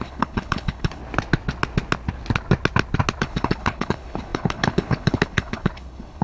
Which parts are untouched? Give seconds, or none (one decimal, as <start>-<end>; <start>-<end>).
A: 1.0-3.2